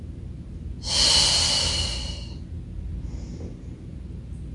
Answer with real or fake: real